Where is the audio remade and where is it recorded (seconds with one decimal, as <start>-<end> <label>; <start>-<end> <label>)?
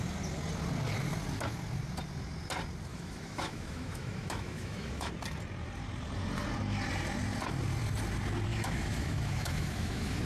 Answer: 0.0-2.9 recorded; 2.9-5.1 remade; 5.1-8.5 recorded; 8.5-10.2 remade